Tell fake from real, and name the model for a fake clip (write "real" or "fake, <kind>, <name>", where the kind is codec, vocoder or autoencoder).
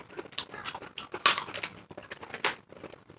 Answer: real